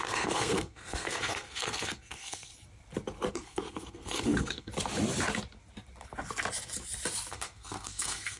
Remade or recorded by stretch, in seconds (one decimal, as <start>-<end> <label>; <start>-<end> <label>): 0.0-2.5 remade; 2.5-3.3 recorded; 3.3-4.7 remade; 4.7-7.3 recorded; 7.3-8.4 remade